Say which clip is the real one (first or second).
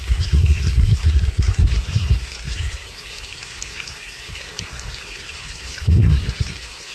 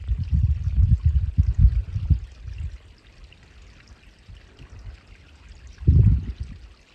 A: second